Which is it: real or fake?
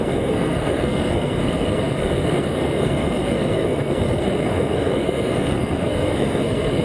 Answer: fake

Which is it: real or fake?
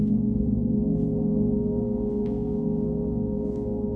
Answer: fake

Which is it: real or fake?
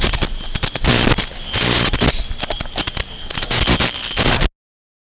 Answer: real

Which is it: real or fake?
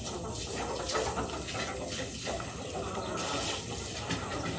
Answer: real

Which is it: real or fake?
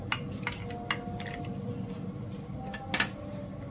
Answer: real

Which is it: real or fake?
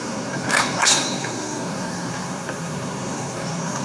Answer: fake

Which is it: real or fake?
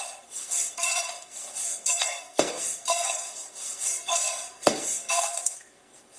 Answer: fake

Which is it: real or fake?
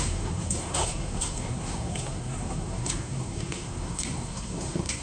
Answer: fake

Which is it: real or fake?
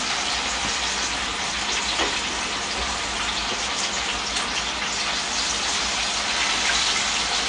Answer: real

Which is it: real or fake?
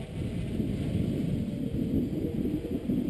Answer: real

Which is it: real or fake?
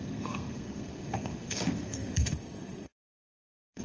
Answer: fake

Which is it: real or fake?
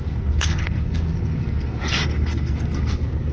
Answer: fake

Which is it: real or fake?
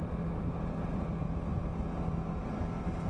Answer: real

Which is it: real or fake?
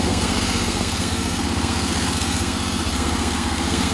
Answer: fake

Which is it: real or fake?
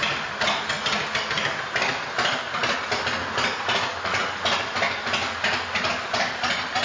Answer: real